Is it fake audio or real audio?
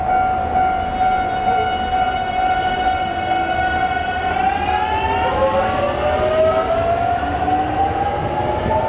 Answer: real